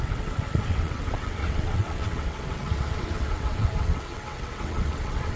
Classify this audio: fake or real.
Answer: fake